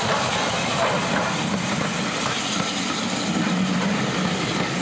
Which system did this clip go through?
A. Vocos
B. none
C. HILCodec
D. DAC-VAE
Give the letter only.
B